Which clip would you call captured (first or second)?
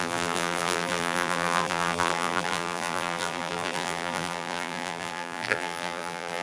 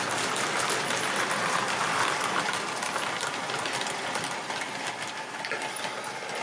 second